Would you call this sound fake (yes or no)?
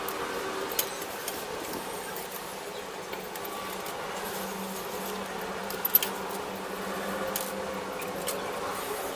no